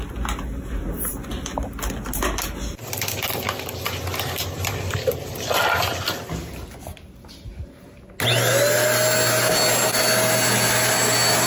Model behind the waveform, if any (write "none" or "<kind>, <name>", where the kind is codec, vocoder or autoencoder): none